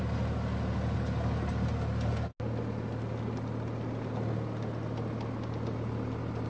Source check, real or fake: real